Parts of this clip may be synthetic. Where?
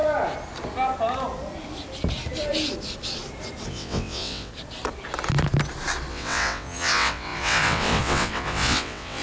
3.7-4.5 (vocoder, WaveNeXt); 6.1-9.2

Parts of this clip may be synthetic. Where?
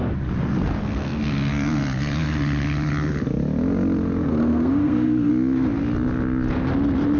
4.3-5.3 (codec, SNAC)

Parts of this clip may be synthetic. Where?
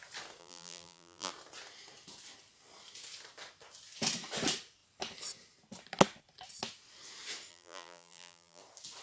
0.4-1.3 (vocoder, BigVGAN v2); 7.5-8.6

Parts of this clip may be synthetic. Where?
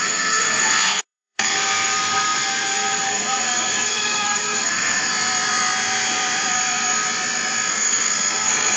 0.0-5.1 (codec, SNAC); 7.7-8.8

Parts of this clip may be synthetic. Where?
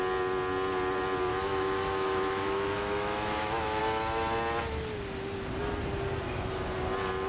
1.3-3.8 (autoencoder, DAC-VAE)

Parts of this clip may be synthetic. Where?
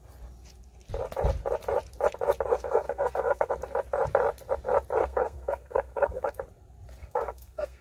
2.5-3.5 (codec, SNAC); 5.0-6.4; 7.0-7.8